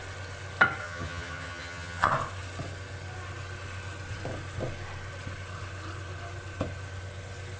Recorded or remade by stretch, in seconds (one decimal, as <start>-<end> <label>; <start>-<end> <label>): 0.0-0.8 recorded; 0.8-2.1 remade; 2.1-7.6 recorded